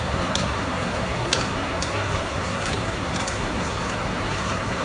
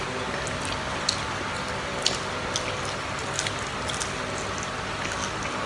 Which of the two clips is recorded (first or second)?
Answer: second